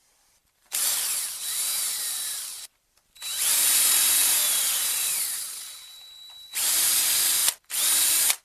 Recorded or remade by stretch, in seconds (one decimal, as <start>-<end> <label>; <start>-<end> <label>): 0.0-7.4 remade; 7.4-8.4 recorded